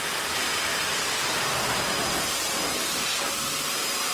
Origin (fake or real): fake